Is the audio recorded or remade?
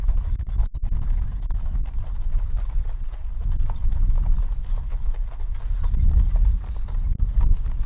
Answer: recorded